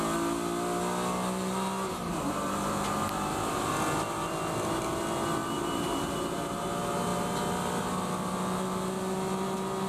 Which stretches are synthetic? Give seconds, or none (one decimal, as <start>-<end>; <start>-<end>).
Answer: 2.1-3.7; 5.4-6.5